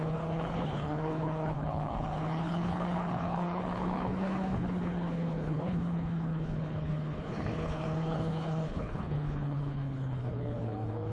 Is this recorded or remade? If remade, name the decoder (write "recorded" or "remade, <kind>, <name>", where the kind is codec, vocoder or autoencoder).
remade, codec, HILCodec